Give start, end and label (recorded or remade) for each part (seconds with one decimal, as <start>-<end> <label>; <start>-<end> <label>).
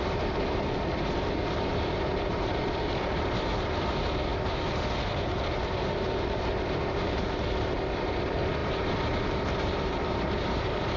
0.0-4.3 remade; 4.3-5.6 recorded; 5.6-11.0 remade